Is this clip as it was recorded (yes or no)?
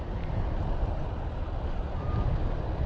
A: no